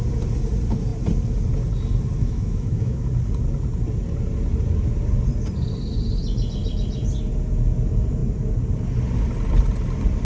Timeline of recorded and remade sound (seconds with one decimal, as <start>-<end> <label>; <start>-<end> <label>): 0.0-2.2 recorded; 2.2-3.1 remade; 3.1-10.2 recorded

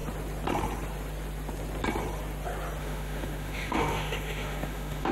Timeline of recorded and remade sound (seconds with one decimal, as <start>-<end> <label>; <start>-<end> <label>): 0.0-2.8 recorded; 2.8-5.1 remade

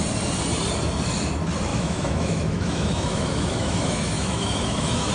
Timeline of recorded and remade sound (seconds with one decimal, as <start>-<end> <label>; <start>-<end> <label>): 0.0-1.7 recorded; 1.7-5.1 remade